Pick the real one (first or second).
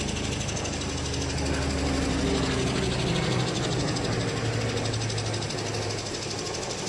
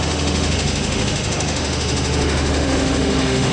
first